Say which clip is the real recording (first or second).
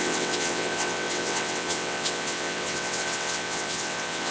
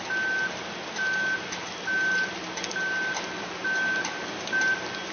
second